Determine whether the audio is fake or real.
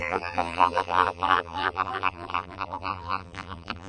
fake